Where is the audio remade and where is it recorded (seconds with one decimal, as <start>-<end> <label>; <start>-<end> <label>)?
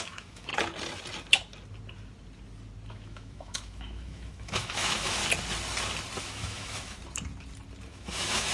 0.0-0.5 remade; 0.5-2.9 recorded; 2.9-5.2 remade; 5.2-6.2 recorded; 6.2-7.0 remade; 7.0-7.9 recorded; 7.9-8.5 remade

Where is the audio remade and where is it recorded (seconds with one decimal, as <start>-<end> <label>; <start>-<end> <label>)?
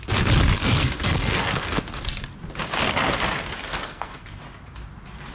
0.0-0.6 recorded; 0.6-1.8 remade; 1.8-3.6 recorded; 3.6-4.4 remade; 4.4-5.3 recorded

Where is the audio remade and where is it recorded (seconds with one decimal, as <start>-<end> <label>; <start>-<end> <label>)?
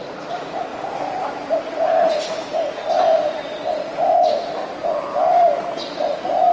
0.0-0.7 remade; 0.7-1.6 recorded; 1.6-4.6 remade; 4.6-5.7 recorded; 5.7-6.5 remade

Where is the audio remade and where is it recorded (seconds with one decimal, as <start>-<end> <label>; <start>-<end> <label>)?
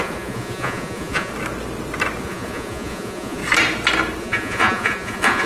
0.0-1.3 remade; 1.3-2.2 recorded; 2.2-3.4 remade; 3.4-4.2 recorded; 4.2-5.5 remade